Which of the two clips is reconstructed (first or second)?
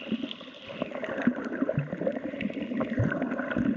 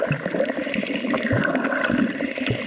second